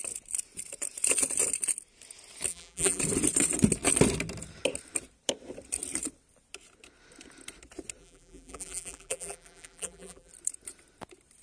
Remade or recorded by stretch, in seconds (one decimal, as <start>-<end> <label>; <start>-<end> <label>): 0.0-2.5 recorded; 2.5-3.0 remade; 3.0-8.0 recorded; 8.0-10.3 remade; 10.3-11.4 recorded